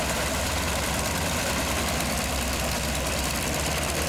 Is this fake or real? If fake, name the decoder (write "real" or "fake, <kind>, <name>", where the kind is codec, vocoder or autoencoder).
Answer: fake, vocoder, BigVGAN v2